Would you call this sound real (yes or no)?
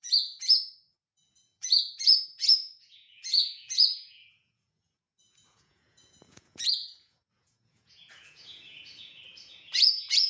no